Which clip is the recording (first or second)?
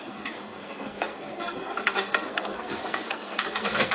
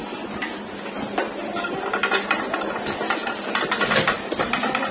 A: second